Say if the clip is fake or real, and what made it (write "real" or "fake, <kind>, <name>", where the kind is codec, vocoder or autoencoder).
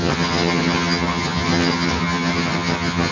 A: fake, vocoder, HiFi-GAN